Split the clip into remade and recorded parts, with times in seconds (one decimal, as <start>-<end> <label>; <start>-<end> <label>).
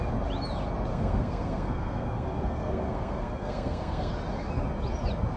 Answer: 0.0-0.9 recorded; 0.9-4.1 remade; 4.1-5.4 recorded